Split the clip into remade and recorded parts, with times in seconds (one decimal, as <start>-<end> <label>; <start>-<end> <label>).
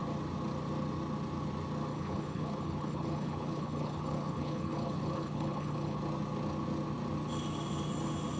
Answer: 0.0-1.9 recorded; 1.9-6.0 remade; 6.0-8.4 recorded